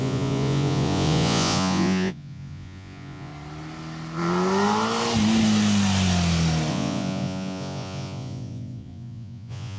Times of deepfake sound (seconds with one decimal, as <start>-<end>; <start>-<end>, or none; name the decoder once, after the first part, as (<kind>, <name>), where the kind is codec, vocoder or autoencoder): 0.0-3.3 (vocoder, Vocos); 6.7-9.8